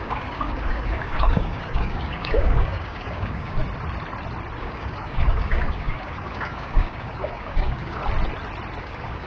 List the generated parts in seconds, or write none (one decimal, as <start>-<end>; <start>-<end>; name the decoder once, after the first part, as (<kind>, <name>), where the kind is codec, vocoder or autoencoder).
0.0-3.6 (codec, DAC); 4.6-8.0; 8.8-9.3